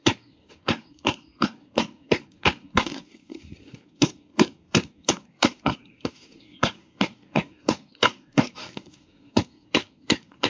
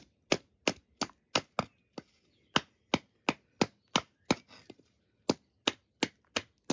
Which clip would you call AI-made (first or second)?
first